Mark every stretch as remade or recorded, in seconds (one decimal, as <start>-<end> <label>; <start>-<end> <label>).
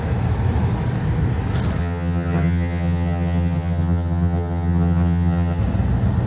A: 0.0-1.8 recorded; 1.8-5.6 remade; 5.6-6.3 recorded